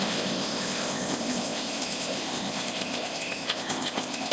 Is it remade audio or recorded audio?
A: remade